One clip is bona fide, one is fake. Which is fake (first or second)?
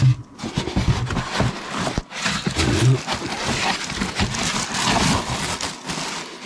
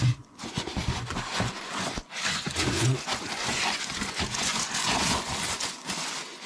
second